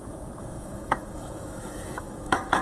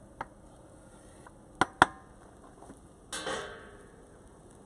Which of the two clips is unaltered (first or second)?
second